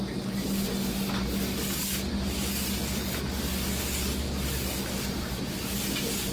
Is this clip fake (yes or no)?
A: no